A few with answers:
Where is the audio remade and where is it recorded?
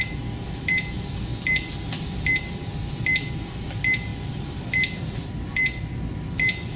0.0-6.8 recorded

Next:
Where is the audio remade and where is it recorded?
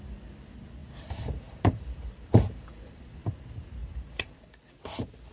0.0-0.8 recorded; 0.8-3.3 remade; 3.3-3.8 recorded; 3.8-4.8 remade; 4.8-5.3 recorded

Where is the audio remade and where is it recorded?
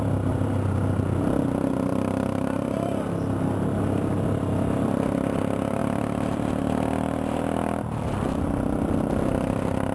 0.0-1.9 recorded; 1.9-2.9 remade; 2.9-5.8 recorded; 5.8-6.6 remade; 6.6-9.9 recorded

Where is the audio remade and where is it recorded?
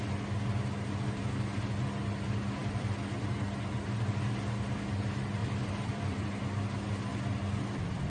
0.0-2.6 recorded; 2.6-3.2 remade; 3.2-5.4 recorded; 5.4-6.4 remade; 6.4-8.1 recorded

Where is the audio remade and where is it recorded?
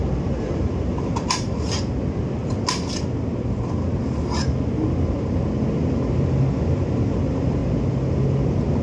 0.0-1.7 remade; 1.7-8.8 recorded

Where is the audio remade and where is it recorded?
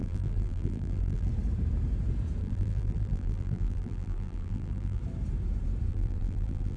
0.0-1.3 remade; 1.3-2.4 recorded; 2.4-5.0 remade; 5.0-5.9 recorded; 5.9-6.8 remade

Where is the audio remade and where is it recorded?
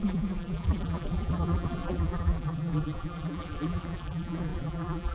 0.0-5.1 remade